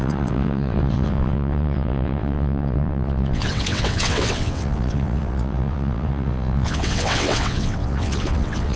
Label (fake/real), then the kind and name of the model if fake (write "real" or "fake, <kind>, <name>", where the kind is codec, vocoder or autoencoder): fake, vocoder, WaveNeXt